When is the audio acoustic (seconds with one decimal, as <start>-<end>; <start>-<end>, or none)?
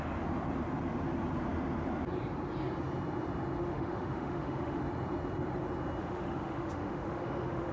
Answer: 0.0-3.6; 4.8-6.0